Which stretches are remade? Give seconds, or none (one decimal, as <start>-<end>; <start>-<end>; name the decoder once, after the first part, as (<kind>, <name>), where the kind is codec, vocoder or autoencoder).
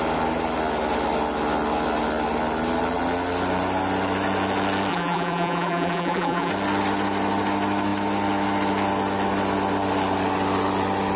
4.9-6.5 (vocoder, BigVGAN v2)